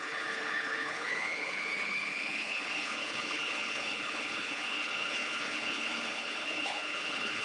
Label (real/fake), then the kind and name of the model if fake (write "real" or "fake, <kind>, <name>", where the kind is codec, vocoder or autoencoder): fake, codec, HILCodec